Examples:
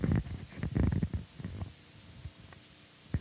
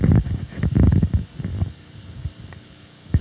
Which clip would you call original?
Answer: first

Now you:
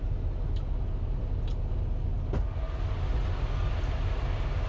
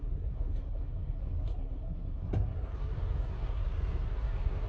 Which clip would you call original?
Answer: first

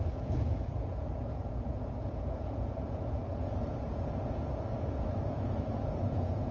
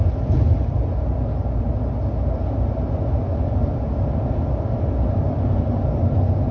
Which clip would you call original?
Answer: second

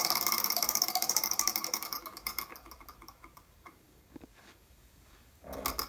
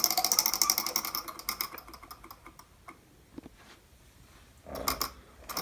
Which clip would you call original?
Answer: second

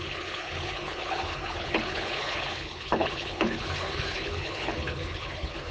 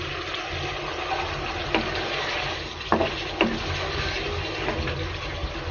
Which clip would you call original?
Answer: second